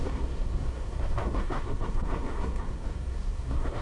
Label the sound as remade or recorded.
remade